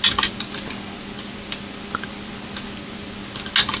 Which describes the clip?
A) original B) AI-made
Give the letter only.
A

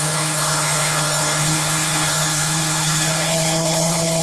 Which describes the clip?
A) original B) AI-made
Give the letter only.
B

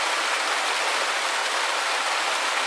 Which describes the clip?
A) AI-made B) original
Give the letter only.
B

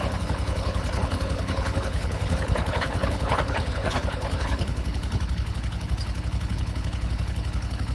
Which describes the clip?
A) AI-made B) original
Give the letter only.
A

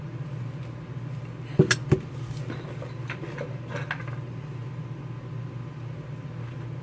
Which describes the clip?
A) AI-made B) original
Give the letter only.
B